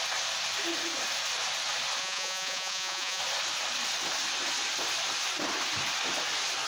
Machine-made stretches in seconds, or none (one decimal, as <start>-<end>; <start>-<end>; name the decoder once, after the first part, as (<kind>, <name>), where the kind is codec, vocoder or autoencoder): 2.0-3.2 (vocoder, Vocos)